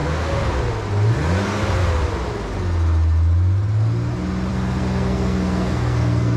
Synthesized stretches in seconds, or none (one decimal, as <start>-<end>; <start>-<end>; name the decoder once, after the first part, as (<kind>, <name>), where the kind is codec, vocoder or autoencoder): 4.5-6.4 (codec, SNAC)